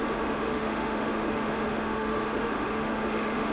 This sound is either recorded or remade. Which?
remade